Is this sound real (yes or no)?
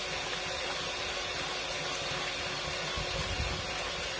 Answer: yes